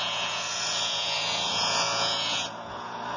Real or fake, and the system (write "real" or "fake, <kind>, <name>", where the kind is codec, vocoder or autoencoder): fake, vocoder, Vocos